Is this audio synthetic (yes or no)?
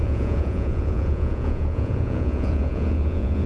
yes